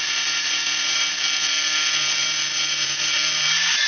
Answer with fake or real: real